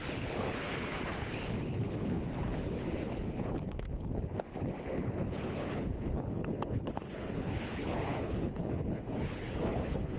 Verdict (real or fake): fake